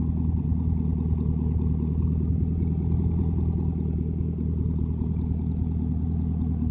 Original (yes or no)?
yes